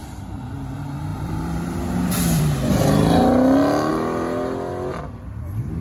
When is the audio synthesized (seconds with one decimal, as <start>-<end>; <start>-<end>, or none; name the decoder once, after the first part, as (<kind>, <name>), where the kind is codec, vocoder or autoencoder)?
1.1-2.4 (vocoder, BigVGAN v2)